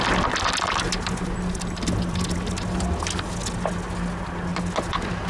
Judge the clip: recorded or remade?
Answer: recorded